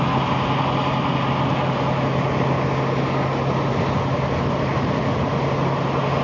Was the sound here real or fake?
real